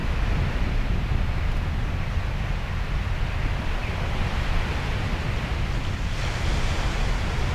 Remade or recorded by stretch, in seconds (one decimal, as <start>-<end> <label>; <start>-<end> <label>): 0.0-7.5 recorded

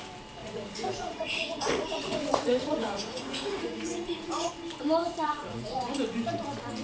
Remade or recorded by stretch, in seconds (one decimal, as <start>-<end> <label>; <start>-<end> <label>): 0.0-0.4 recorded; 0.4-4.5 remade; 4.5-5.0 recorded; 5.0-5.8 remade; 5.8-6.8 recorded